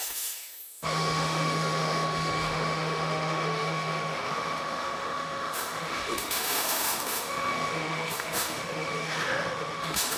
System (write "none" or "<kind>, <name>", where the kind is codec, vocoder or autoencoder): autoencoder, DAC-VAE